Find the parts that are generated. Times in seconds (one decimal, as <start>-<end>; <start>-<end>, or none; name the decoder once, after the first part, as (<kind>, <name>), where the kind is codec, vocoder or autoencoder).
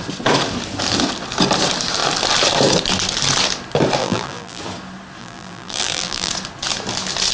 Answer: 4.0-4.6 (vocoder, BigVGAN v2); 5.2-6.3